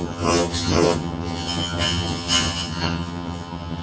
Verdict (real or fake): fake